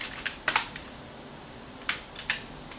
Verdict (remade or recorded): recorded